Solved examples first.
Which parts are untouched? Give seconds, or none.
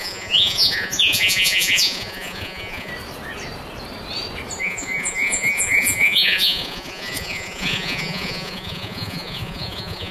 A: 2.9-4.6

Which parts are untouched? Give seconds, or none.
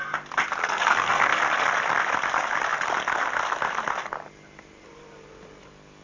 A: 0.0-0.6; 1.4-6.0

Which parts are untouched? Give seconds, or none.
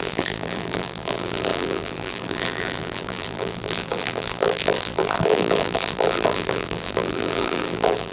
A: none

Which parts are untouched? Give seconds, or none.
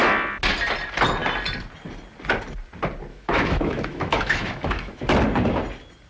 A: 0.0-3.1; 5.0-6.1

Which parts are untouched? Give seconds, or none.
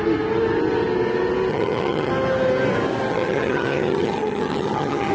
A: 0.0-1.5; 2.1-3.1